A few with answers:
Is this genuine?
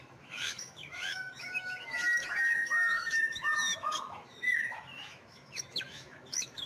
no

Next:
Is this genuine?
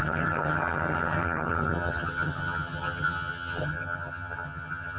no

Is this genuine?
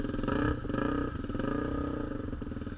yes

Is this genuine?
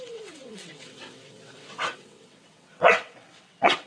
no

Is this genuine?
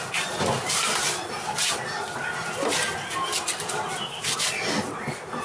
yes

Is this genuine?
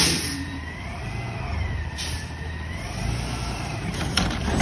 no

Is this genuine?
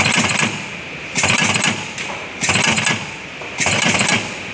yes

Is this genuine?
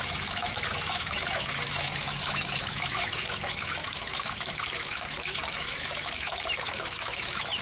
no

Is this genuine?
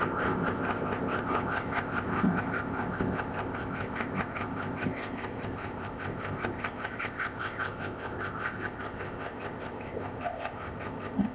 no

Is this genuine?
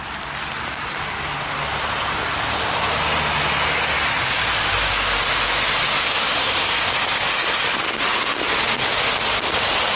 yes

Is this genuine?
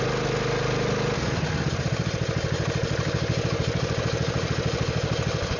yes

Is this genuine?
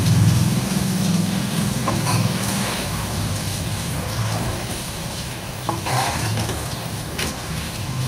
no